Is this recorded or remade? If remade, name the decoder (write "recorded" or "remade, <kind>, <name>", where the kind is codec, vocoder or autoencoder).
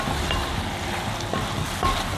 recorded